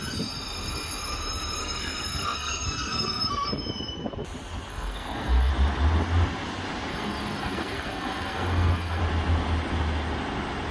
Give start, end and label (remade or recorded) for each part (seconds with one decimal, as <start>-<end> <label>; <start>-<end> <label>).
0.0-1.6 recorded; 1.6-3.5 remade; 3.5-4.7 recorded; 4.7-5.5 remade; 5.5-6.9 recorded; 6.9-9.0 remade; 9.0-10.7 recorded